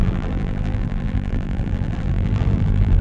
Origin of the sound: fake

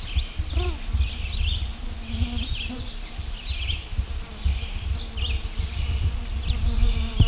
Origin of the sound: real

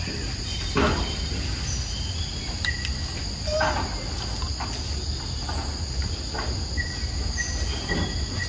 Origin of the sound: real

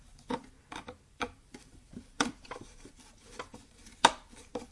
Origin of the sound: fake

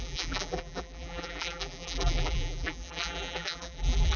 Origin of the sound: fake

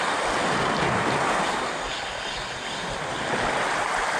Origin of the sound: real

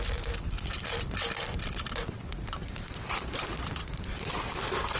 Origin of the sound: fake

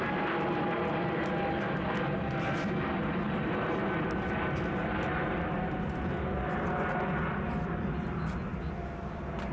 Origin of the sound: real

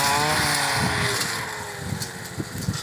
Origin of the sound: real